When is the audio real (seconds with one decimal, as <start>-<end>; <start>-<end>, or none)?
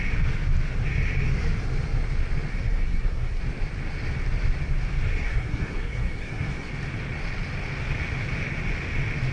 0.0-2.5; 3.4-5.1; 6.7-9.3